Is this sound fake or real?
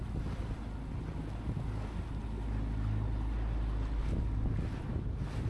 real